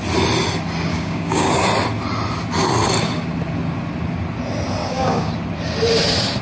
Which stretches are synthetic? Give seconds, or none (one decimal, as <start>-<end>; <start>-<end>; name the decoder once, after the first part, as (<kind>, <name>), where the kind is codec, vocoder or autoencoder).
0.9-1.5 (codec, DAC); 4.8-5.3